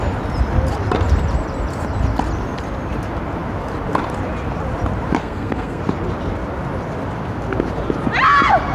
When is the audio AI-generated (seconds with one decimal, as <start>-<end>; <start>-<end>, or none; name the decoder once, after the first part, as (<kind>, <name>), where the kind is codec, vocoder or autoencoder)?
5.2-5.8 (codec, SNAC)